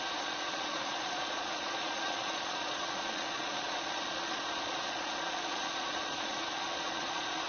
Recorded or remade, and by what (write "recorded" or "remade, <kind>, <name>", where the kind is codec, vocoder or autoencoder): remade, vocoder, Vocos